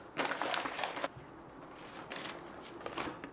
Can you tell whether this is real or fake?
real